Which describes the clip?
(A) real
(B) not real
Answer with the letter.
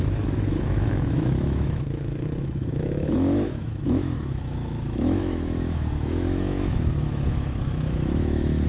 B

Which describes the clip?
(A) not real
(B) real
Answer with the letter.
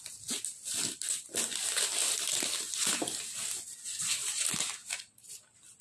B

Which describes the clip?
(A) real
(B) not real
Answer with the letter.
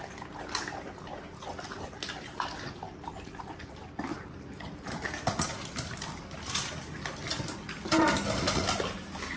A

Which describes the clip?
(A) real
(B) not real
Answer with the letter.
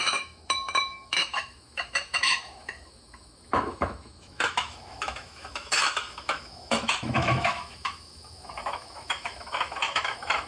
B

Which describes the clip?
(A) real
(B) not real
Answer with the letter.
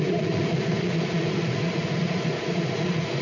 B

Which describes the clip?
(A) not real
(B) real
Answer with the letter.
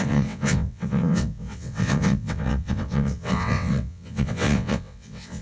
A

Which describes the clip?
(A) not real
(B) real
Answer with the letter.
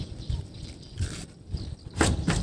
B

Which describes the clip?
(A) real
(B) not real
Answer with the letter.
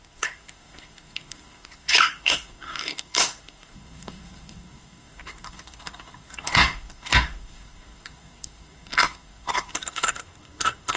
B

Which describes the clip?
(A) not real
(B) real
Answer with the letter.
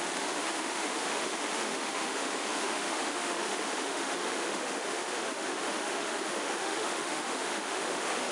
A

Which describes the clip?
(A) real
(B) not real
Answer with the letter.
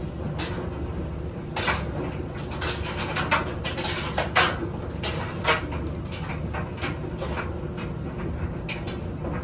A